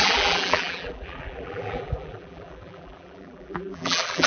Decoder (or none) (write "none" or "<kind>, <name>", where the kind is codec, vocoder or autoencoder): vocoder, BigVGAN v2